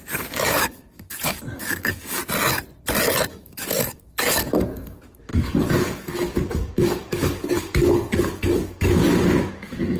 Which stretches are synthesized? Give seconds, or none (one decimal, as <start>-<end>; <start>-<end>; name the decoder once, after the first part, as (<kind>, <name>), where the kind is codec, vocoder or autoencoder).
0.0-2.2 (codec, DAC); 3.3-10.0